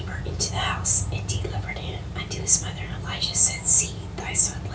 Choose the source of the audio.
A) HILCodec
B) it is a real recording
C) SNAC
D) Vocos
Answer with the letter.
B